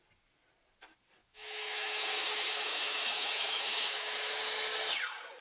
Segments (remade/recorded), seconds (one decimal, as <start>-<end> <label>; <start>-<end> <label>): 0.0-1.2 recorded; 1.2-4.4 remade; 4.4-5.4 recorded